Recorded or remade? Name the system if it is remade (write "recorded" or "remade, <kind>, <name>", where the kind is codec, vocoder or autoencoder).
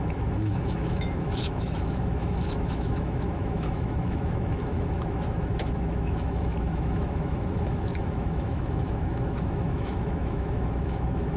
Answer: remade, autoencoder, DAC-VAE